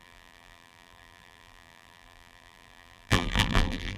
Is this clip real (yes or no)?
no